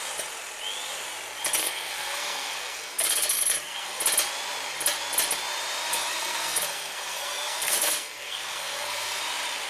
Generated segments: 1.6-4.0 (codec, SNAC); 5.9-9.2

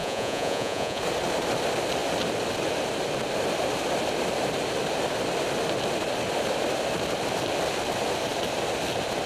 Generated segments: 0.0-1.0 (vocoder, Vocos)

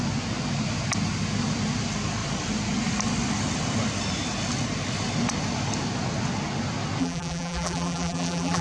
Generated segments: 7.0-8.6 (vocoder, BigVGAN v2)

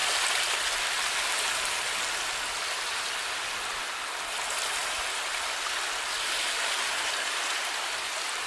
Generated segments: none

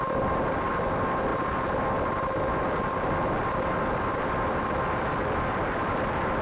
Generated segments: none